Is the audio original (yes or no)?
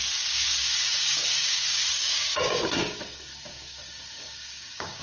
no